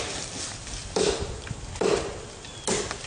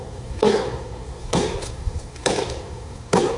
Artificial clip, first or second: second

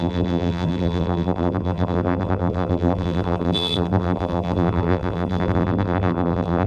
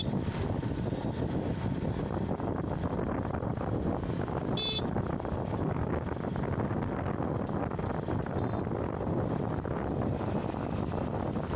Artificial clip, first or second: first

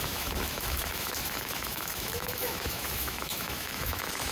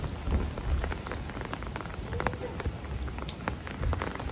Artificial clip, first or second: first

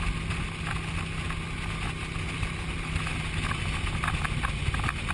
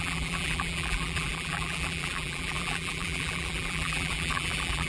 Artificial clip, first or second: second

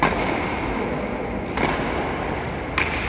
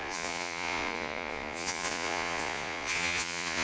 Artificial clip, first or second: second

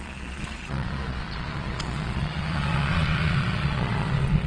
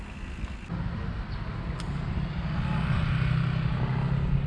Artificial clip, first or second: first